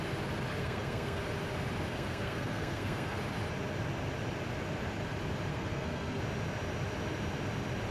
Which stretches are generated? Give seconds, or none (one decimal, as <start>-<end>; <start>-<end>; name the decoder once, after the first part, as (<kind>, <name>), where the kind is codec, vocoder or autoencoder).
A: 0.6-1.2 (codec, SNAC); 1.9-3.2; 5.5-6.2